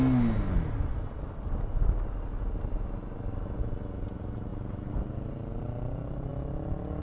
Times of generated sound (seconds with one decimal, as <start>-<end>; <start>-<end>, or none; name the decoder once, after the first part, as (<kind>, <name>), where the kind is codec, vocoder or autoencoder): none